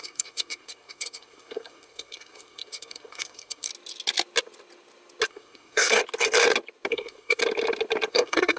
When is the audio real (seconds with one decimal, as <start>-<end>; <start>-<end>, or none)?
3.7-5.3; 6.0-6.9; 7.4-8.1